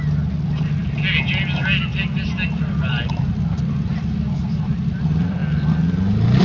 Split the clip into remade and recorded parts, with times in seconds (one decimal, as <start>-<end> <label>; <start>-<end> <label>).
0.0-6.4 recorded

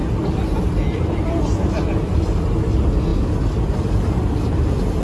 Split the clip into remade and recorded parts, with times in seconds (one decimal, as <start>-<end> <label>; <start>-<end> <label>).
0.0-5.0 recorded

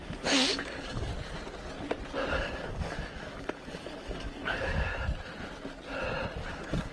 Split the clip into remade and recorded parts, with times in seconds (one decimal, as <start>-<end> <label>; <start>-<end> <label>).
0.0-1.1 remade; 1.1-2.3 recorded; 2.3-4.9 remade; 4.9-6.5 recorded; 6.5-6.9 remade

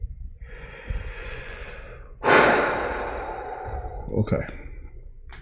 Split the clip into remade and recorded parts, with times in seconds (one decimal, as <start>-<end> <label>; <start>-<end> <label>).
0.0-1.6 remade; 1.6-4.8 recorded; 4.8-5.4 remade

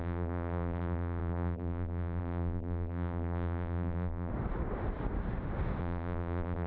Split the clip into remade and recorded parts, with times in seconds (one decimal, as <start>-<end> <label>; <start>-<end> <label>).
0.0-4.3 remade; 4.3-5.8 recorded; 5.8-6.7 remade